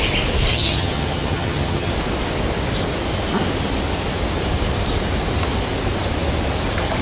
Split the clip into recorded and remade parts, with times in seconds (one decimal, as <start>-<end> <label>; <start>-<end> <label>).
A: 0.0-0.5 recorded; 0.5-1.9 remade; 1.9-7.0 recorded